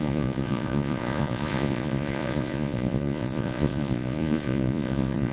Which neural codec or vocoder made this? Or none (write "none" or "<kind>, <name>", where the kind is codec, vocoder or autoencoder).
vocoder, Vocos